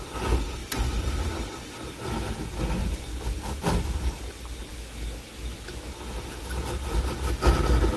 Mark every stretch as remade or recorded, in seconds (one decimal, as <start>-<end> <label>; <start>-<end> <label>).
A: 0.0-4.7 recorded; 4.7-5.9 remade; 5.9-8.0 recorded